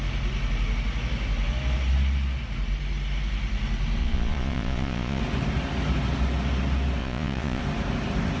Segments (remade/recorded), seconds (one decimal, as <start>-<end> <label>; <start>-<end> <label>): 0.0-4.0 recorded; 4.0-5.2 remade; 5.2-7.0 recorded; 7.0-7.6 remade; 7.6-8.4 recorded